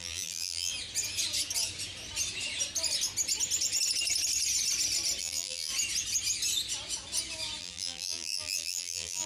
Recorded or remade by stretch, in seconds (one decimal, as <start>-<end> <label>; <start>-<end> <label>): 0.0-0.7 remade; 0.7-5.2 recorded; 5.2-5.7 remade; 5.7-7.6 recorded; 7.6-9.3 remade